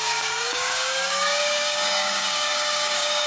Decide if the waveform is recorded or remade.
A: remade